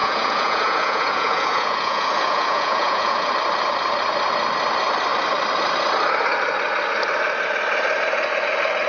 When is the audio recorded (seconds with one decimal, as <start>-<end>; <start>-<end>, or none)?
3.3-8.9